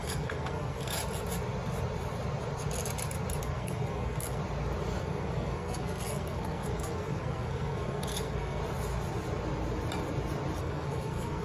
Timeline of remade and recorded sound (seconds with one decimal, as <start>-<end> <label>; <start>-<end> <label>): 0.0-1.0 remade; 1.0-3.4 recorded; 3.4-4.4 remade; 4.4-5.0 recorded; 5.0-8.6 remade; 8.6-10.6 recorded; 10.6-11.4 remade